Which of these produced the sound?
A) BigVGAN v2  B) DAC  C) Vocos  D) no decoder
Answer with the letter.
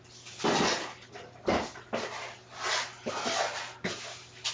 D